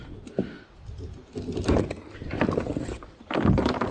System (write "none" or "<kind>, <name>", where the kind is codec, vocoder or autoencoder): none